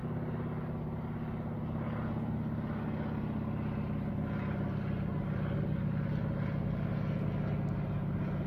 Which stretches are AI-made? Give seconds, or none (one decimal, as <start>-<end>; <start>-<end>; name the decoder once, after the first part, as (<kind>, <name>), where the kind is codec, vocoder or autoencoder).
none

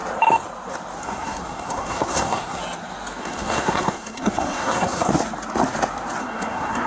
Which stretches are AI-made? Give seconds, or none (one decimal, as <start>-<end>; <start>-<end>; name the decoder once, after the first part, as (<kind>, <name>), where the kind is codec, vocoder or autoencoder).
1.0-2.6 (codec, SNAC); 3.2-5.1; 6.2-6.9